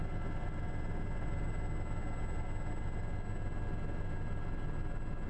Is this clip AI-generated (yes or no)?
no